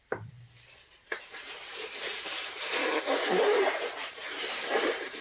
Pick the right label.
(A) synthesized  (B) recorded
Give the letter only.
A